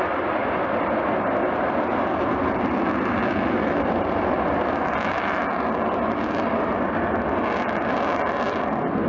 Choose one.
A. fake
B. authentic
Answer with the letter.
B